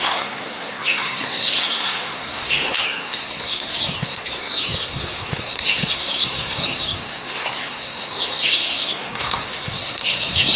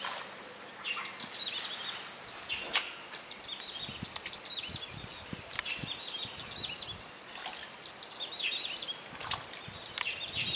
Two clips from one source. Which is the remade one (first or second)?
first